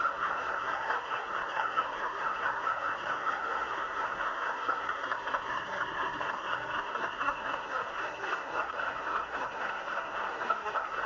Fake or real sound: fake